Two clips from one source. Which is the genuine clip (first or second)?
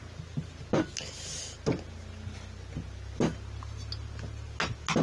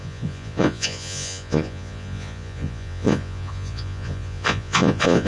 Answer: first